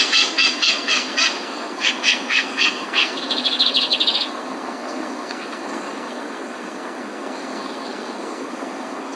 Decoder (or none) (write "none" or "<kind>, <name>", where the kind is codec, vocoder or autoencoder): codec, SNAC